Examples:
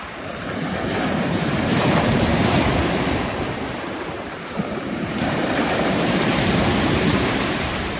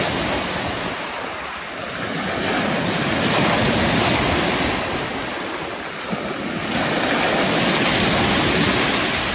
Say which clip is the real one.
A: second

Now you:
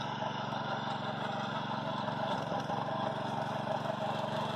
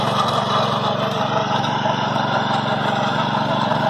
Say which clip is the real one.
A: first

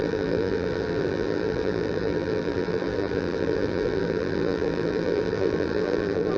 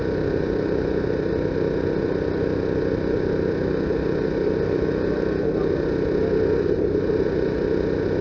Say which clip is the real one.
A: second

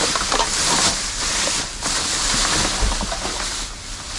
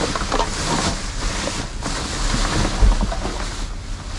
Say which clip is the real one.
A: second